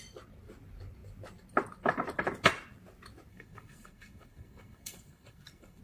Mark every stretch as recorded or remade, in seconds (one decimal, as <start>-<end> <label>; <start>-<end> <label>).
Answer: 0.0-3.3 recorded; 3.3-5.8 remade